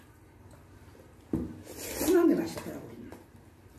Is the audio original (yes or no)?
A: yes